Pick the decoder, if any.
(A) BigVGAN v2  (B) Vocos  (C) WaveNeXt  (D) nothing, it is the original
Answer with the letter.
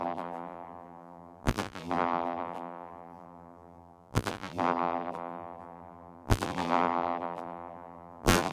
A